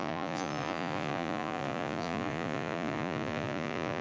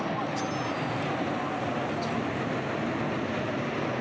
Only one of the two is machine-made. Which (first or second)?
first